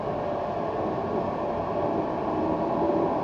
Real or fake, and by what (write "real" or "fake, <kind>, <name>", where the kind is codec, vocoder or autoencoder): real